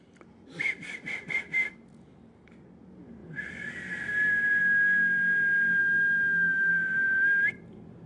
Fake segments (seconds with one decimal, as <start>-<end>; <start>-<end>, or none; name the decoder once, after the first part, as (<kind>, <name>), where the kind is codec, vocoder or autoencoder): 5.8-6.7 (autoencoder, DAC-VAE)